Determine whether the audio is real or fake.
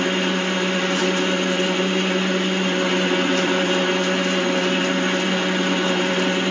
real